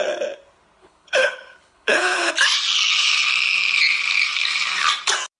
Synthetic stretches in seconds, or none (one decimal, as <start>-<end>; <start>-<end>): 0.8-2.3

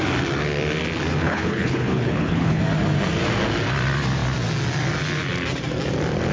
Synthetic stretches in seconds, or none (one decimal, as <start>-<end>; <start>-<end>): 1.2-2.6

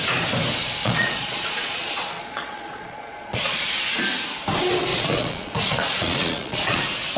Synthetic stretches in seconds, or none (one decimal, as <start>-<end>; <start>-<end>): 0.8-3.7; 4.9-6.8

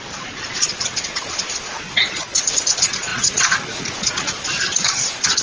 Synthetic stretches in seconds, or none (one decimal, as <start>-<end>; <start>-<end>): 0.0-5.4

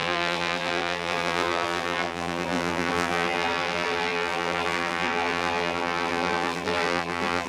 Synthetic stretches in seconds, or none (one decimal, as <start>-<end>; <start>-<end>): 0.0-7.5

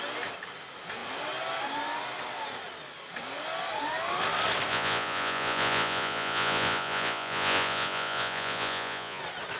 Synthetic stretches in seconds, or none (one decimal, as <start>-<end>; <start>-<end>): 4.7-9.2